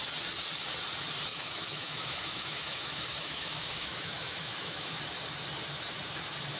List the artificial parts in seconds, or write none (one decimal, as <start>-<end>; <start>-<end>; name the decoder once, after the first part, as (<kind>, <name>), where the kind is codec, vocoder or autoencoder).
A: 1.3-5.0 (autoencoder, DAC-VAE)